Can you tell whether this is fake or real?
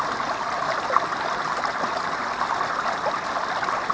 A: real